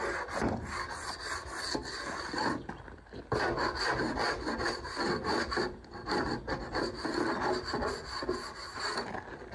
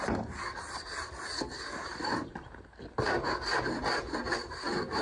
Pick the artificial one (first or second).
second